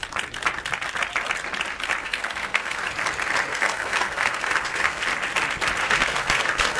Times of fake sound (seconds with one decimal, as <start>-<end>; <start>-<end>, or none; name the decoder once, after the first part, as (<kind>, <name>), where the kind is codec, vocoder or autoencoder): 2.0-2.8 (codec, SNAC); 3.5-5.0; 5.8-6.8

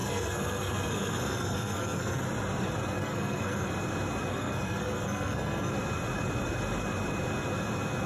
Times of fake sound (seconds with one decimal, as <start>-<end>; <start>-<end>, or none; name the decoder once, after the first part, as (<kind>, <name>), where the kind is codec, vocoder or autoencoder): 0.0-2.2 (codec, SNAC); 3.0-3.7; 4.3-5.7

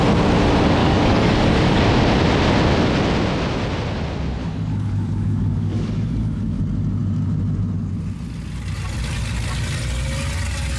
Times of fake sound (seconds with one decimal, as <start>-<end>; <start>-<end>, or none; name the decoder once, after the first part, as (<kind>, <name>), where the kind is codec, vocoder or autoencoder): 0.8-1.8 (codec, DAC); 4.4-6.6